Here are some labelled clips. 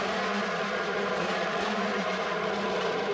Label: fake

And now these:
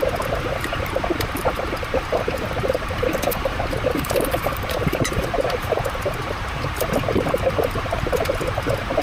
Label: fake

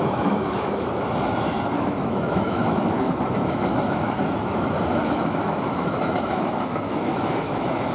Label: fake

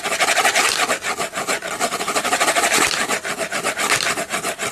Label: real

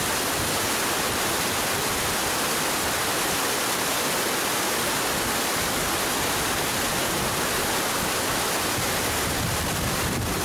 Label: real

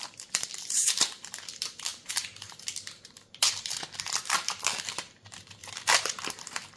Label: fake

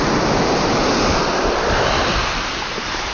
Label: real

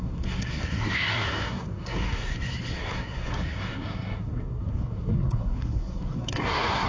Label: fake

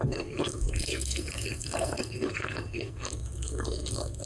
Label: fake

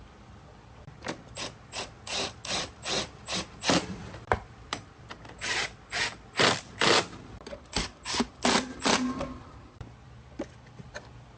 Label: fake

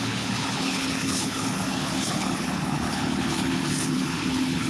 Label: fake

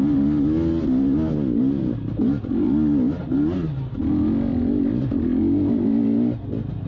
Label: real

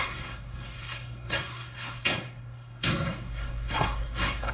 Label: fake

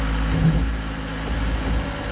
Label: real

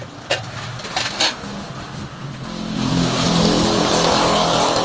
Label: real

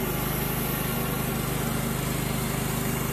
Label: real